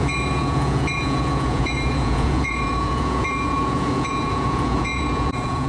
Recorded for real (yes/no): no